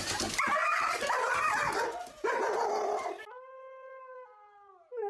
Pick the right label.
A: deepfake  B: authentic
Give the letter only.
B